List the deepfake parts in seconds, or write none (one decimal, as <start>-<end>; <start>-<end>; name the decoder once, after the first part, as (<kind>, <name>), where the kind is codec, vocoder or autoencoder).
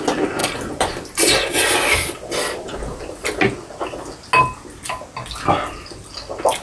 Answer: none